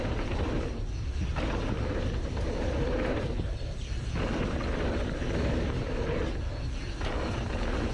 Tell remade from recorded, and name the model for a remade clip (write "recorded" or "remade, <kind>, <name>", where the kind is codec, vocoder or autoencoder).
recorded